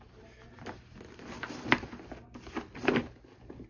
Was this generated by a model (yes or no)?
no